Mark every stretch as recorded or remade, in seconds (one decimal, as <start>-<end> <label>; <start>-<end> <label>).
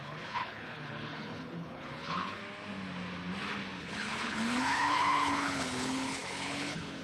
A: 0.0-2.4 remade; 2.4-3.8 recorded; 3.8-7.0 remade